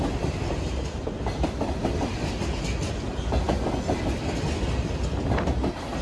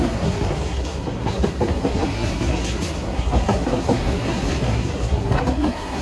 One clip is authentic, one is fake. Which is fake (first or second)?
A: second